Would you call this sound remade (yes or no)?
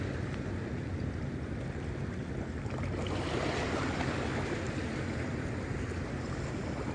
no